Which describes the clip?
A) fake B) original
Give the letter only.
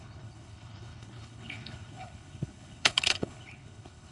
A